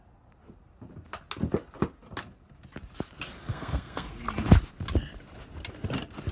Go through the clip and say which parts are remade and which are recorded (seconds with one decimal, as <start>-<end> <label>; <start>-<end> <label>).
0.0-3.5 recorded; 3.5-4.3 remade; 4.3-6.3 recorded